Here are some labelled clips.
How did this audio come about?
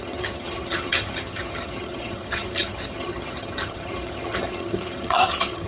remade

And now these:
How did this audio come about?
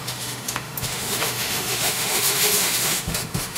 remade